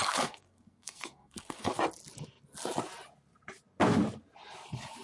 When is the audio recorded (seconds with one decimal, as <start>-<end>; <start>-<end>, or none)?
1.8-5.0